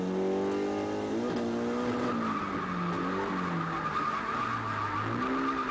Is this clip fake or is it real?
real